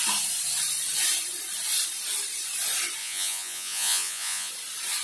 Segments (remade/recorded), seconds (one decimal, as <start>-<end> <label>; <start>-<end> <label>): 0.0-3.0 recorded; 3.0-4.5 remade; 4.5-5.0 recorded